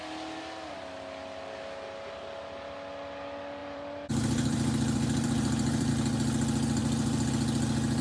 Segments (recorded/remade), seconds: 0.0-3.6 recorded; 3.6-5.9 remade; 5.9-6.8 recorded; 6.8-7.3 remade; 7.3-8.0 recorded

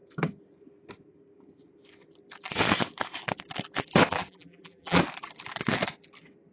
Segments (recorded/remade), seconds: 0.0-4.0 recorded; 4.0-5.0 remade; 5.0-6.5 recorded